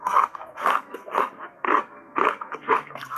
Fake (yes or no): yes